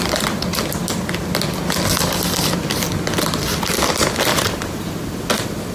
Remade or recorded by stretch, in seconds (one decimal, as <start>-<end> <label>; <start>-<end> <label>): 0.0-4.3 recorded; 4.3-5.2 remade; 5.2-5.7 recorded

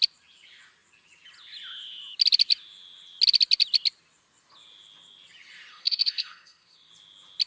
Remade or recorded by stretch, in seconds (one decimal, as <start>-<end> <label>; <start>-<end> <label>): 0.0-5.7 recorded; 5.7-6.9 remade; 6.9-7.5 recorded

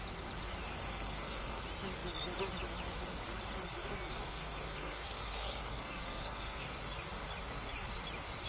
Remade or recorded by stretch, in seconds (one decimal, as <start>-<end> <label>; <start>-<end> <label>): 0.0-0.8 recorded; 0.8-1.6 remade; 1.6-4.1 recorded; 4.1-6.7 remade; 6.7-8.5 recorded

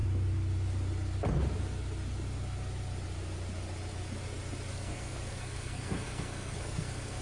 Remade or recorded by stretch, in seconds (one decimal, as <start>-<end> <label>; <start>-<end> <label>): 0.0-4.7 recorded; 4.7-7.2 remade

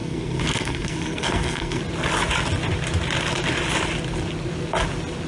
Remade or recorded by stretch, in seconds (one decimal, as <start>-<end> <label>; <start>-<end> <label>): 0.0-1.8 remade; 1.8-5.3 recorded

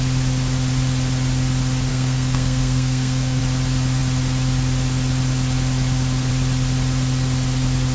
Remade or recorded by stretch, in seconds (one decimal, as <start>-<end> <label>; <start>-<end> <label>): 0.0-1.9 recorded; 1.9-3.4 remade; 3.4-7.9 recorded